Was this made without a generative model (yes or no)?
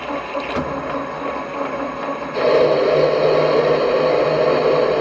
yes